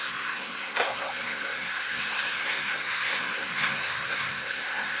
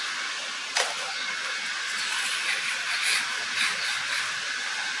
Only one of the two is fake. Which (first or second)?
first